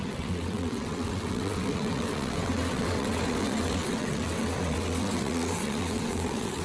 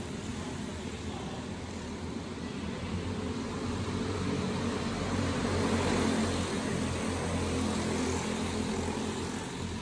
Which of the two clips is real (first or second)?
second